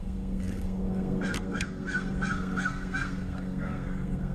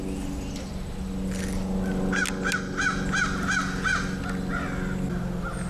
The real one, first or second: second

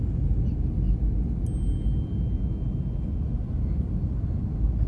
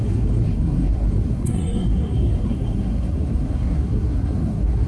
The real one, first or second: first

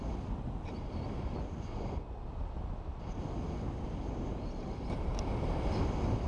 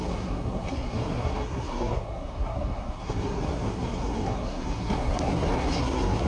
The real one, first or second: first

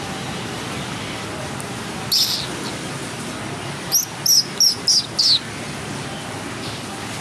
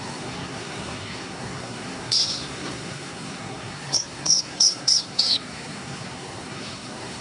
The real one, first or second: first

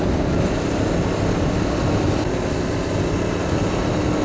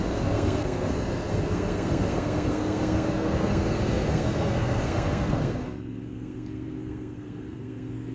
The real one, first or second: first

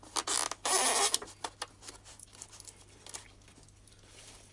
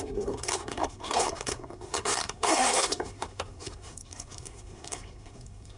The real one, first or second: first